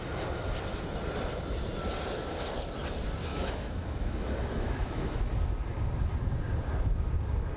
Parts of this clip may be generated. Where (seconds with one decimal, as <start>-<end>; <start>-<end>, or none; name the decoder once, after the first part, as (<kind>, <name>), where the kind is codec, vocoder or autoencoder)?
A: 3.3-5.2 (autoencoder, DAC-VAE)